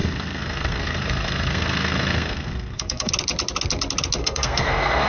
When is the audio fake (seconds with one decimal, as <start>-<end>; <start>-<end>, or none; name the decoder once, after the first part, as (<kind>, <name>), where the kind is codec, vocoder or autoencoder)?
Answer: 0.0-3.1 (codec, SNAC); 4.2-5.1